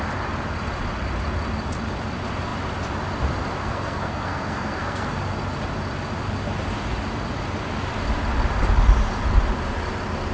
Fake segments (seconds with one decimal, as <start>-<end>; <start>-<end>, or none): 3.6-5.2